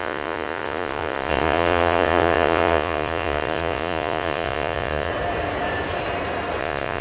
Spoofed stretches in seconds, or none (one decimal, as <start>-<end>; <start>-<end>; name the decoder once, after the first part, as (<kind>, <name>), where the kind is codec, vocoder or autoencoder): 0.0-5.1 (vocoder, Vocos); 6.6-7.0